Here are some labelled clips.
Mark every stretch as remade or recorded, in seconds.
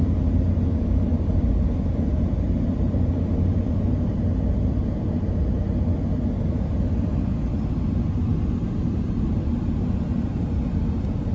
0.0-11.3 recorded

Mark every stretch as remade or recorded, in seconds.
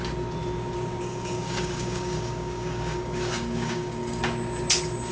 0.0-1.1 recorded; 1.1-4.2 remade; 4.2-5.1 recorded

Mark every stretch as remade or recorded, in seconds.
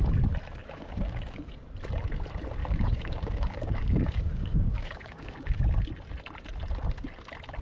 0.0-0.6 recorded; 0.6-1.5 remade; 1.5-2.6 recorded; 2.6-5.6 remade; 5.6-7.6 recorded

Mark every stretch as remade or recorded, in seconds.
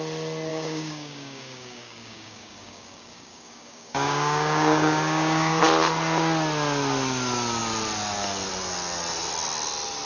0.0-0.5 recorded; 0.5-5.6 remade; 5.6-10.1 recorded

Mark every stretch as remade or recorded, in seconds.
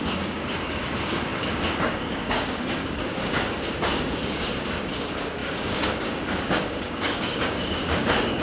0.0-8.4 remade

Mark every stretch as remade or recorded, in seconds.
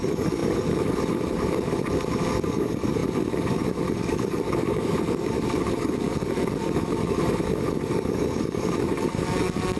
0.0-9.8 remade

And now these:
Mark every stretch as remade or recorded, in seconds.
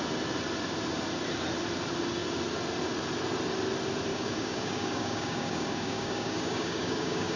0.0-4.1 recorded; 4.1-7.4 remade